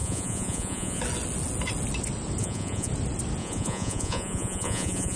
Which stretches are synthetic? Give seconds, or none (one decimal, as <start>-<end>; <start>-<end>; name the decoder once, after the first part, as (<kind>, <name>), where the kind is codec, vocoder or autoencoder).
0.0-1.0 (vocoder, Vocos); 2.4-2.9; 3.4-5.2